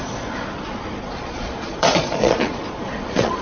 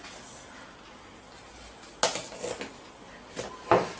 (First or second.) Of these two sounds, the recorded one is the second